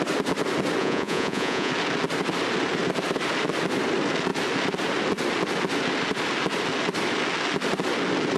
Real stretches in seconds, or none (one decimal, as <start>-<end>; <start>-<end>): 0.0-0.8; 1.7-8.4